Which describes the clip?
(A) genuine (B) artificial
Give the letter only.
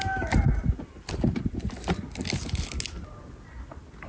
A